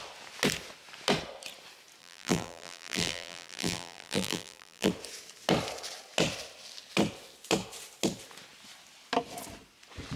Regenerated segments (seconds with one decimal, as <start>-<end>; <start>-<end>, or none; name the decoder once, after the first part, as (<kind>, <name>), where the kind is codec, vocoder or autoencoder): 2.0-4.9 (vocoder, BigVGAN v2)